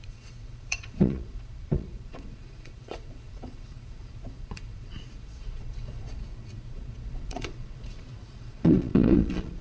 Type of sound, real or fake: fake